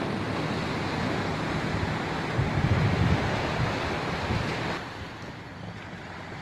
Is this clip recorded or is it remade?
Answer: recorded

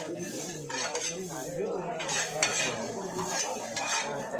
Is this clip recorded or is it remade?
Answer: remade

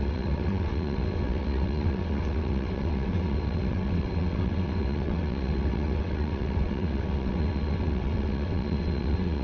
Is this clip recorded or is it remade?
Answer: remade